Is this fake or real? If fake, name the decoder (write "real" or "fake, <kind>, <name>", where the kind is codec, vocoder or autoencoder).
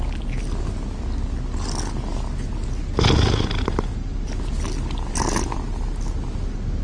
real